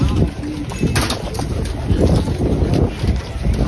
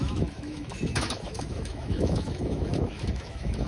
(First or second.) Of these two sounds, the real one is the first